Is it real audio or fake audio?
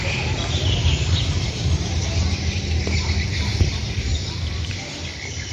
real